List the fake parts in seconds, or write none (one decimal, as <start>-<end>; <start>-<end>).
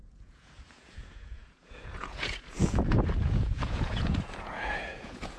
0.0-5.4